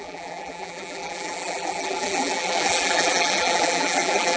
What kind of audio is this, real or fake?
fake